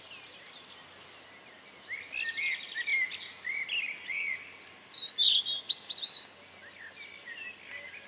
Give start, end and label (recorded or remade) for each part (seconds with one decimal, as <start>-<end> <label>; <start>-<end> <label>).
0.0-8.1 recorded